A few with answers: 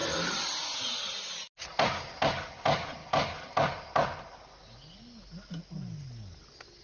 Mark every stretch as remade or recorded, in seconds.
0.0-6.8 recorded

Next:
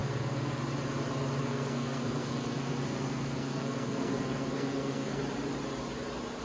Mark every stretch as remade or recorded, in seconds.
0.0-0.6 remade; 0.6-1.4 recorded; 1.4-5.2 remade; 5.2-6.4 recorded

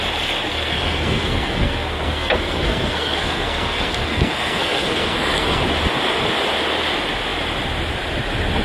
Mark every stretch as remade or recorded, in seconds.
0.0-0.5 recorded; 0.5-5.6 remade; 5.6-8.6 recorded

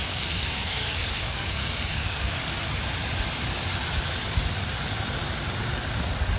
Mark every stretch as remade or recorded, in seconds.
0.0-2.4 remade; 2.4-6.4 recorded

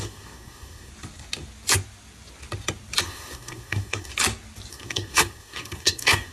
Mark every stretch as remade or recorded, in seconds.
0.0-0.9 remade; 0.9-3.0 recorded; 3.0-4.1 remade; 4.1-4.7 recorded; 4.7-6.3 remade

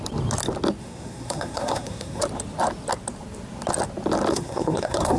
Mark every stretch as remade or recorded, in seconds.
0.0-0.8 recorded; 0.8-2.2 remade; 2.2-4.3 recorded; 4.3-5.2 remade

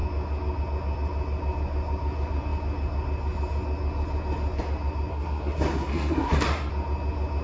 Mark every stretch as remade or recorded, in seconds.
0.0-5.1 recorded; 5.1-6.7 remade; 6.7-7.4 recorded

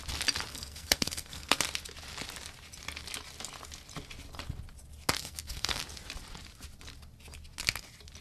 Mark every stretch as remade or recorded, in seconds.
0.0-0.5 recorded; 0.5-1.6 remade; 1.6-5.2 recorded; 5.2-5.8 remade; 5.8-8.2 recorded